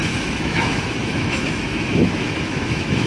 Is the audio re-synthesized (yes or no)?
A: yes